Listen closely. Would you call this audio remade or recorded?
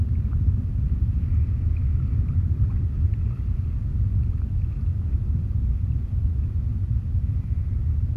recorded